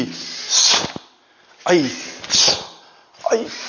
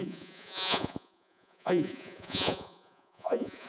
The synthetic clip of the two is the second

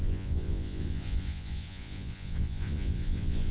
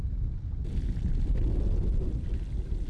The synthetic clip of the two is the first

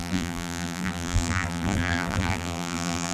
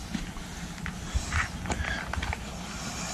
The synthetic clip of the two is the first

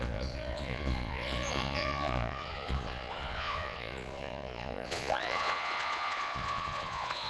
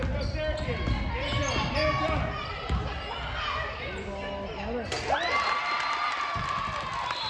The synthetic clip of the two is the first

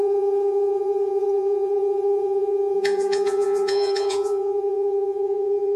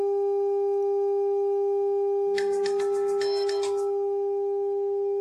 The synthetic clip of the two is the first